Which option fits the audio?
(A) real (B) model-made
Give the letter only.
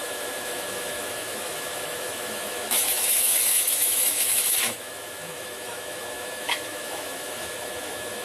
B